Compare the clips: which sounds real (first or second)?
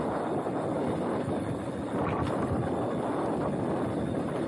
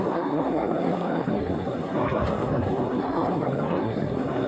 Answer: first